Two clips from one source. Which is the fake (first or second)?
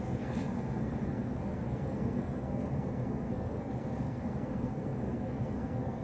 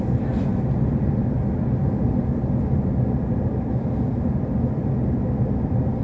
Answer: first